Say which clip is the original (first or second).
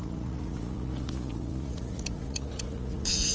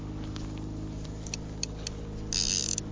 second